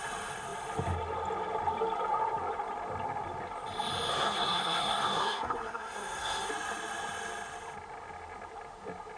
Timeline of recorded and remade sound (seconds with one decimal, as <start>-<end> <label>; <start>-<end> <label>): 0.0-4.1 recorded; 4.1-6.5 remade; 6.5-9.2 recorded

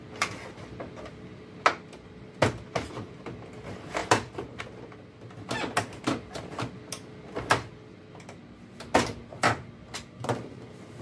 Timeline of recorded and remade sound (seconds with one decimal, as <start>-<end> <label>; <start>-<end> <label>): 0.0-4.0 recorded; 4.0-4.6 remade; 4.6-11.0 recorded

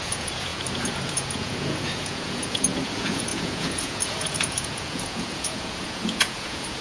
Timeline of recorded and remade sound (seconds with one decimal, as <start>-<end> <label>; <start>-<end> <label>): 0.0-6.8 remade

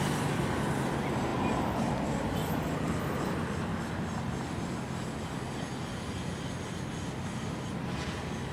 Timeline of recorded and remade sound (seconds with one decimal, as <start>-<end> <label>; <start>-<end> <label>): 0.0-8.5 recorded

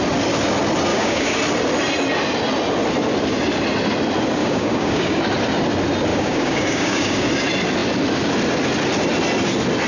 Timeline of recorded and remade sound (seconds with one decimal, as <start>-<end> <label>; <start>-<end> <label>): 0.0-0.9 recorded; 0.9-1.4 remade; 1.4-4.4 recorded; 4.4-5.2 remade; 5.2-6.1 recorded; 6.1-7.3 remade; 7.3-9.9 recorded